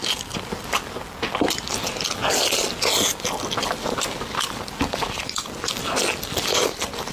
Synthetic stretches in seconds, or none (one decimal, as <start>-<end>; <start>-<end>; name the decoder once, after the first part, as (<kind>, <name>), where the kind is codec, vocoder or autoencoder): none